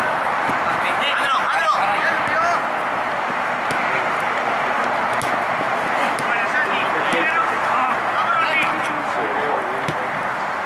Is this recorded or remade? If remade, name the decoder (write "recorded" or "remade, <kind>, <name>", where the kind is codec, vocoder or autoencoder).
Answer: recorded